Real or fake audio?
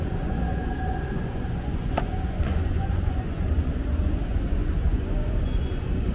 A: fake